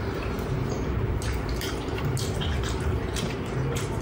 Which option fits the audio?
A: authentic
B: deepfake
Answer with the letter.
B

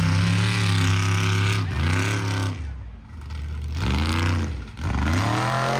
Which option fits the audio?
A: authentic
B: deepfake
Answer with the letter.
A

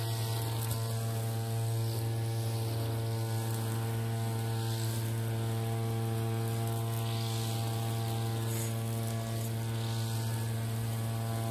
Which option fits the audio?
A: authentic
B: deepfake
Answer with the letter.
A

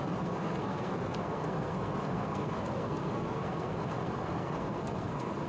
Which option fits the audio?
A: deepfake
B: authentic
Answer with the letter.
A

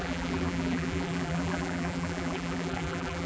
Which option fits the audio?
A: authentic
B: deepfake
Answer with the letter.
B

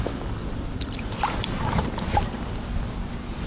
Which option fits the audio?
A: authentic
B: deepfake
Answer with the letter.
A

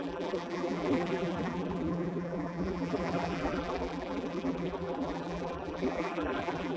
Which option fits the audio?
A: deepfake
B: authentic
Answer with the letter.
A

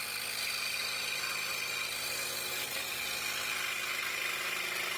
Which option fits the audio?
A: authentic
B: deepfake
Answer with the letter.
A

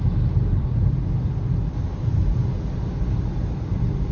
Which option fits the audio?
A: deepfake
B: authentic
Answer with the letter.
A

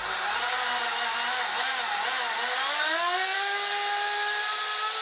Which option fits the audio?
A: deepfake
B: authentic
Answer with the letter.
B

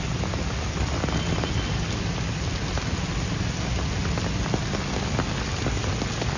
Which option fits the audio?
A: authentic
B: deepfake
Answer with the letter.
A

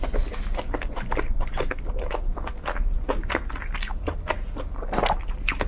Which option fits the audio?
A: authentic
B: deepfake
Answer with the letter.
A